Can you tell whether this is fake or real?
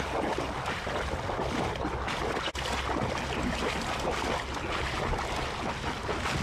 real